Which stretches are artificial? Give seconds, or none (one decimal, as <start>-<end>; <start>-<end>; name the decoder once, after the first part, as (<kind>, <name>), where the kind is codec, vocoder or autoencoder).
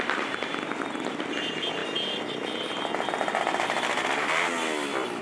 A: none